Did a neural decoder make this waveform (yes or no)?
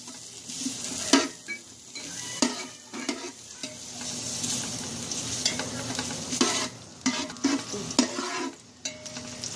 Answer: no